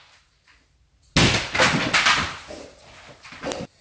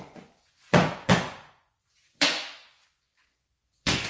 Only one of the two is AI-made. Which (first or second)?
second